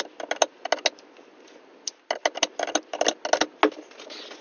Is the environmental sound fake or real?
real